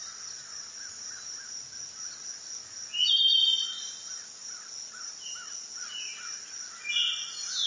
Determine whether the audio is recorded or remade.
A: recorded